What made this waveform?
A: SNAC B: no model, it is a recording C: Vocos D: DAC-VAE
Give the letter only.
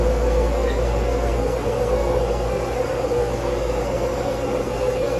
A